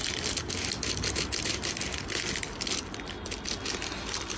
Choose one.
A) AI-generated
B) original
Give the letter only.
B